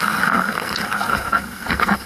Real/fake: fake